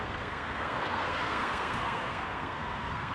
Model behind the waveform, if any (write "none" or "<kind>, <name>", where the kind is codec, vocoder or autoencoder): codec, SNAC